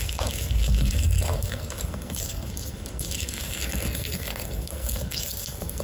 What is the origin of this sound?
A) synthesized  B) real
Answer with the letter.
A